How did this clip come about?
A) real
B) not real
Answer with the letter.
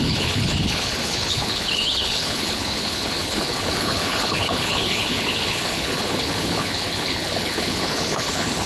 B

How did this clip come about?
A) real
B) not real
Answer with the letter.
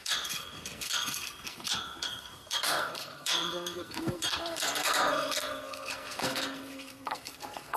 B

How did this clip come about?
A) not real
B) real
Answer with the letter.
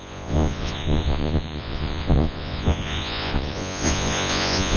A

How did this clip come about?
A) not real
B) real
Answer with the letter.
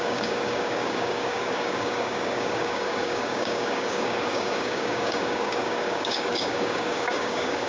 A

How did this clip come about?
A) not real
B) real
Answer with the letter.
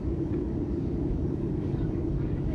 A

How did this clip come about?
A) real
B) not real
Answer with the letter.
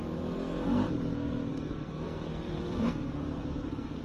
B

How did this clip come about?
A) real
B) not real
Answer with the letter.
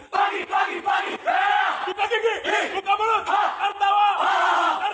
A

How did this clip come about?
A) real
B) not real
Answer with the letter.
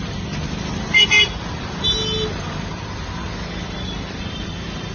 A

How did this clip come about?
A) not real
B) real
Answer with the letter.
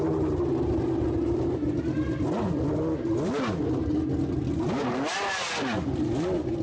B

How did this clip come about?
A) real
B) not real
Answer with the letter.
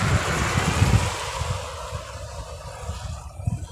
A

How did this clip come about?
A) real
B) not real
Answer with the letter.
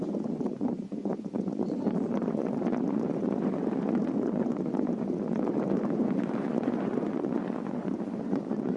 B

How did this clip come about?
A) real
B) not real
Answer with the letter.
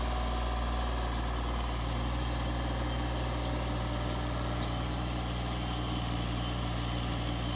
A